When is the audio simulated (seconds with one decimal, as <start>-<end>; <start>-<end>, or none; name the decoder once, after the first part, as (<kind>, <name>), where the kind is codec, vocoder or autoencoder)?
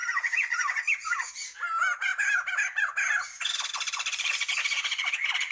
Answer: 0.0-2.1 (vocoder, BigVGAN v2); 3.7-5.5